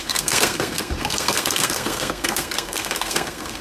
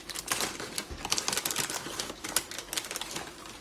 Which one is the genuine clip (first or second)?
second